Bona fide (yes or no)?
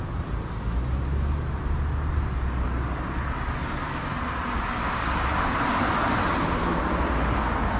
yes